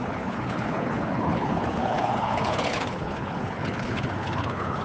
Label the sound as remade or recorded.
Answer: remade